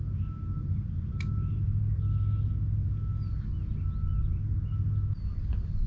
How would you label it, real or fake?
real